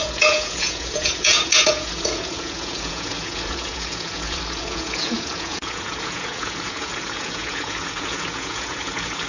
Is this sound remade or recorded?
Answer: remade